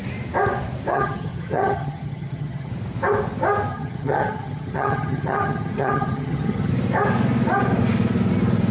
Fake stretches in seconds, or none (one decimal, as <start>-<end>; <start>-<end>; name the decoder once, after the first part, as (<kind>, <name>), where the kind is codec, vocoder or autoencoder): 0.9-2.7 (vocoder, HiFi-GAN); 3.7-6.7